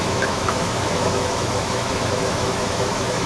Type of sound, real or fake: fake